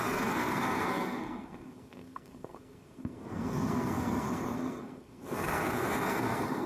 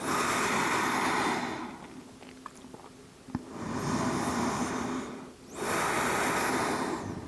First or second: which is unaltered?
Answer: second